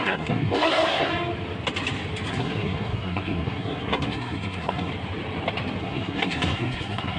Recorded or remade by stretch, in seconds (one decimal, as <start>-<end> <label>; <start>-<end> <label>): 0.0-1.1 remade; 1.1-2.3 recorded; 2.3-4.9 remade; 4.9-5.8 recorded; 5.8-7.2 remade